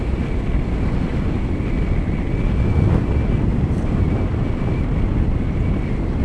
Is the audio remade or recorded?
recorded